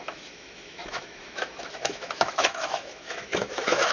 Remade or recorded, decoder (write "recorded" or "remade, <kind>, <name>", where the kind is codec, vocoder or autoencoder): remade, autoencoder, DAC-VAE